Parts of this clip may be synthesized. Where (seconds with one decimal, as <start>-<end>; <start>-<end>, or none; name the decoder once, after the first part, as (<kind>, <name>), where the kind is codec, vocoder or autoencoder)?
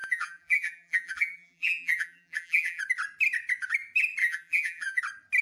0.0-2.8 (vocoder, BigVGAN v2); 4.2-5.0